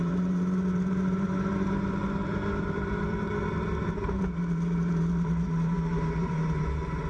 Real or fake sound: fake